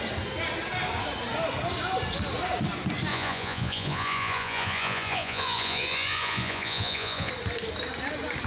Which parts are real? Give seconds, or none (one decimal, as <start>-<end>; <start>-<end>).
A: 0.0-3.1; 7.3-8.5